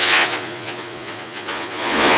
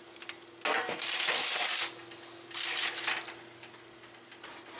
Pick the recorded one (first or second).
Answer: second